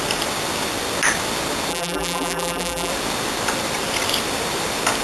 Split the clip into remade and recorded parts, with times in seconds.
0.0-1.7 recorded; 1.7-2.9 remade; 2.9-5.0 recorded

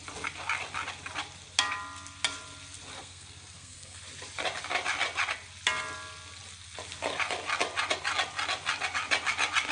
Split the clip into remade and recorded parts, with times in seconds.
0.0-3.0 recorded; 3.0-4.0 remade; 4.0-9.7 recorded

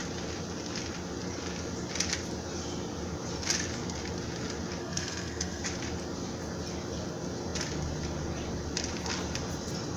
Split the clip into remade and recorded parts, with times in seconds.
0.0-4.8 recorded; 4.8-5.6 remade; 5.6-10.0 recorded

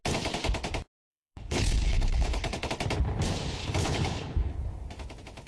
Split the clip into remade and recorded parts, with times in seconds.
0.0-1.1 recorded; 1.1-2.7 remade; 2.7-3.6 recorded; 3.6-4.6 remade; 4.6-5.5 recorded

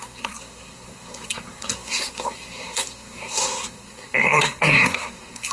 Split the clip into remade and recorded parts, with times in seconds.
0.0-5.5 remade

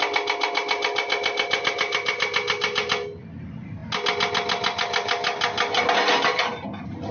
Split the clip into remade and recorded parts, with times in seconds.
0.0-7.1 recorded